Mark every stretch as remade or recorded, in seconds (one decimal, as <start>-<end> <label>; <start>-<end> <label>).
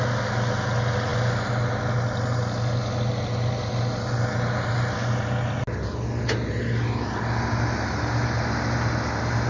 0.0-9.5 recorded